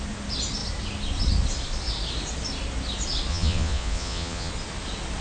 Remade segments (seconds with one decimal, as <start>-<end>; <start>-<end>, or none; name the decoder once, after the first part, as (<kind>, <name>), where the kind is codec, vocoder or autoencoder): 3.3-4.5 (vocoder, Vocos)